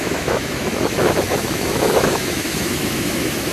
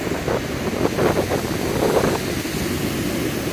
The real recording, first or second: second